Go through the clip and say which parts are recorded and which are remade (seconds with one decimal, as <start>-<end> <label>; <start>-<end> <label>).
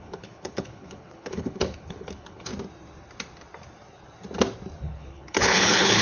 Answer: 0.0-2.5 remade; 2.5-4.8 recorded; 4.8-6.0 remade